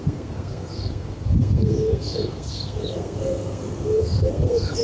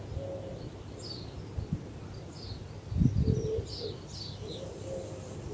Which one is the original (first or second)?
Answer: second